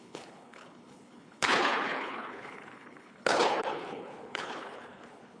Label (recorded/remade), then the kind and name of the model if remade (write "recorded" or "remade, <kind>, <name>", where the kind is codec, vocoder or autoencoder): remade, codec, HILCodec